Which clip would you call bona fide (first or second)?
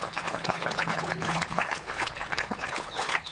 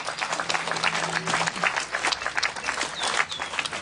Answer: second